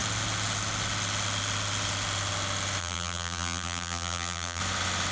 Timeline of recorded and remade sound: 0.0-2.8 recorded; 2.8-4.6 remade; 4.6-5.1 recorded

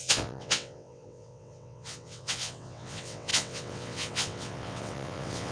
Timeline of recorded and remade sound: 0.0-5.5 remade

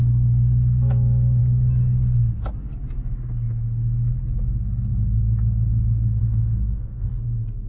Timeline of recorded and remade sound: 0.0-6.2 recorded; 6.2-7.2 remade; 7.2-7.7 recorded

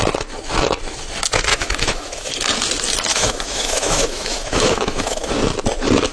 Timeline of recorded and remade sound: 0.0-1.5 recorded; 1.5-2.3 remade; 2.3-3.1 recorded; 3.1-5.3 remade; 5.3-6.1 recorded

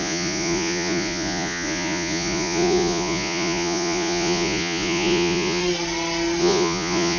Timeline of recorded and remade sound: 0.0-5.6 remade; 5.6-6.4 recorded; 6.4-7.2 remade

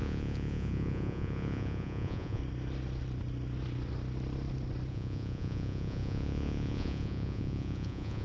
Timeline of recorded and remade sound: 0.0-2.4 remade; 2.4-4.9 recorded; 4.9-8.2 remade